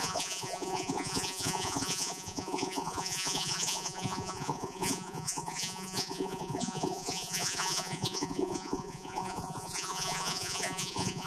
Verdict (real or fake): fake